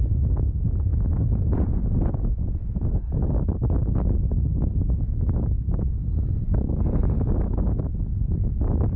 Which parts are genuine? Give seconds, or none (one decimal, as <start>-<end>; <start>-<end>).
0.0-0.9; 2.7-7.0; 7.8-9.0